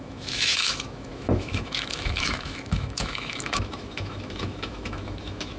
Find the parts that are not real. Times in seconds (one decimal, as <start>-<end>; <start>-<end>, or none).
0.0-5.6